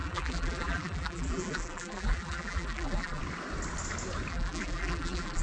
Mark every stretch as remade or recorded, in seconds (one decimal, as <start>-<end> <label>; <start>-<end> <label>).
0.0-3.2 remade; 3.2-4.3 recorded; 4.3-5.4 remade